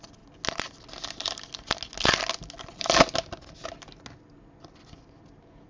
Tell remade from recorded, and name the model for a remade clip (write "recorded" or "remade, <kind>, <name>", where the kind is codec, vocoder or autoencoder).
recorded